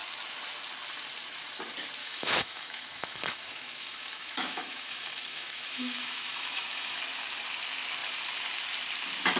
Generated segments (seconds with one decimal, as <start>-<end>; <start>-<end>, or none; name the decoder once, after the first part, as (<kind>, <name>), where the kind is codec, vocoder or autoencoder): 2.0-7.0 (autoencoder, DAC-VAE)